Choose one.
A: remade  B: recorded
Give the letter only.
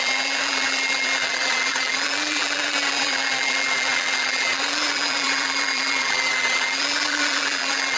A